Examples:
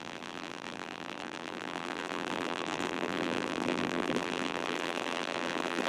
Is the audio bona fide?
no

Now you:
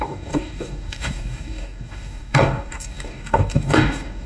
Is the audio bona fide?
no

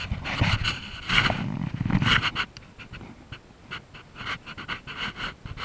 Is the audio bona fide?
yes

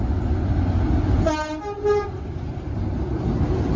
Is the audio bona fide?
yes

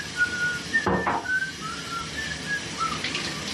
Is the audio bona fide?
yes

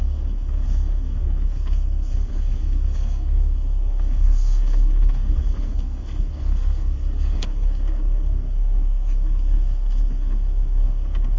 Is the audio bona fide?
no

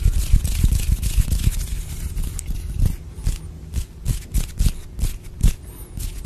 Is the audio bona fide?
yes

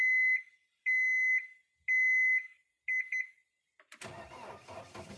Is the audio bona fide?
yes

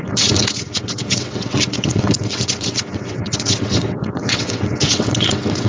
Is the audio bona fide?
no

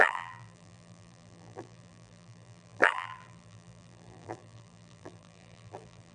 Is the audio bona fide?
no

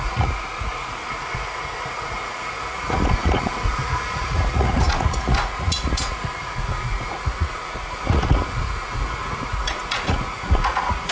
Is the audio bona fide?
no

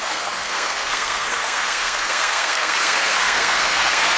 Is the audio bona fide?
no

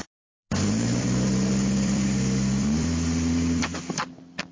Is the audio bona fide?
no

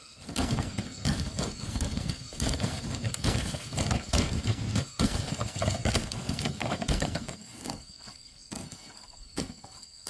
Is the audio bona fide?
no